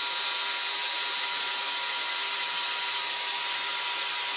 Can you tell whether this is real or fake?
real